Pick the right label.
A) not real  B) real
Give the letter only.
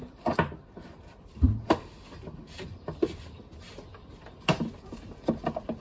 B